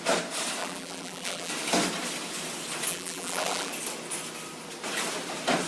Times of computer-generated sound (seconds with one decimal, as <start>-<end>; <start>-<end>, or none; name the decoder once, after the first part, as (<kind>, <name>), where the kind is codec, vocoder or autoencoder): 0.6-1.5 (vocoder, BigVGAN v2); 2.9-3.7